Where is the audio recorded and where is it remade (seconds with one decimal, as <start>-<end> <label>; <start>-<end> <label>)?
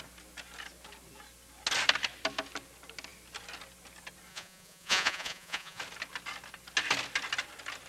0.0-4.3 recorded; 4.3-5.8 remade; 5.8-7.9 recorded